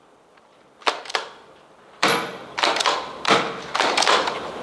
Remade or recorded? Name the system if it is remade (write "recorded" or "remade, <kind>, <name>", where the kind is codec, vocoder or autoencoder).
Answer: remade, vocoder, BigVGAN v2